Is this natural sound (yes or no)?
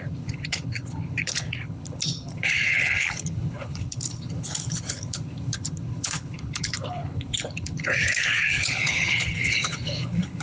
no